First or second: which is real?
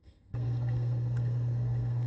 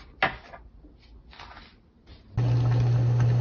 second